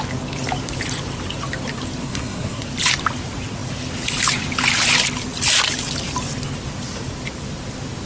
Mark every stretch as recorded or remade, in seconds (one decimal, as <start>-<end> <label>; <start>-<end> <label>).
0.0-2.0 recorded; 2.0-2.6 remade; 2.6-8.1 recorded